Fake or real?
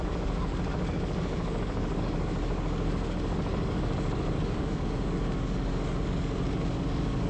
fake